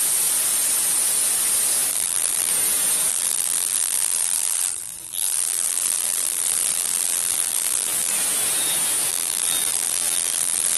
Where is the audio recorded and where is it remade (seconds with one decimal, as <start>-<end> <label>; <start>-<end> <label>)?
0.0-1.9 recorded; 1.9-2.5 remade; 2.5-3.1 recorded; 3.1-8.1 remade; 8.1-9.1 recorded; 9.1-10.8 remade